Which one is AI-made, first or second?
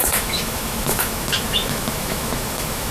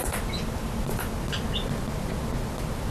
first